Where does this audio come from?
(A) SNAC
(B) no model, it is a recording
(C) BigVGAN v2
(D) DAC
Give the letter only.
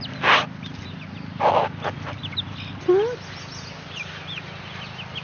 B